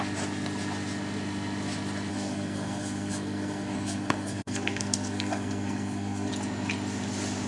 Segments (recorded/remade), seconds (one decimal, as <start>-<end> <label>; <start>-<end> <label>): 0.0-2.1 recorded; 2.1-6.3 remade; 6.3-7.5 recorded